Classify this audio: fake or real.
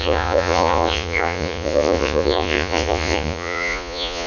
fake